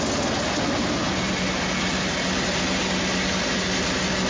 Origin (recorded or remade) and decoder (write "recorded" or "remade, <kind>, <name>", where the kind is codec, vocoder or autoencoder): recorded